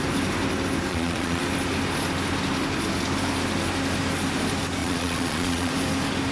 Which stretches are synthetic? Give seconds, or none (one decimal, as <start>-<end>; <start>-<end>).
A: 0.9-1.4; 4.8-5.7